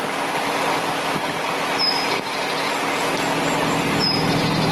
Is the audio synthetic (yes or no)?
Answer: no